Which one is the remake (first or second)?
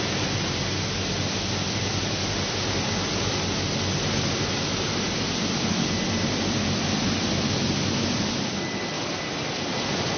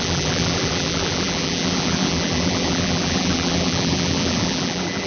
second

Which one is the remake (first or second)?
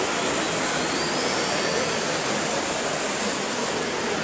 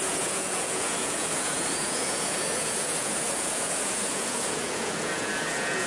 second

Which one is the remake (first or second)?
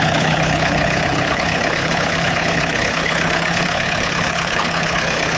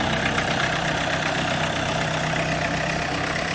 first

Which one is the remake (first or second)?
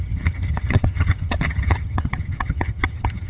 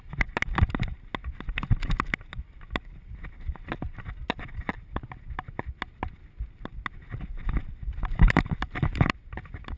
first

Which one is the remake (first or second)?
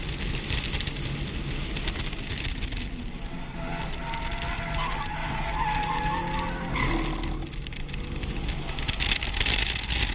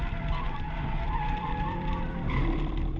second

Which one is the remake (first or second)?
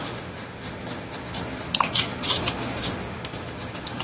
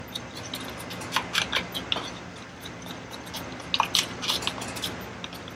first